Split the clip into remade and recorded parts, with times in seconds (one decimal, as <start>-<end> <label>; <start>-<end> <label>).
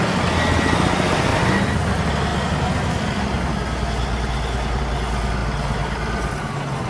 0.0-1.3 recorded; 1.3-1.9 remade; 1.9-6.9 recorded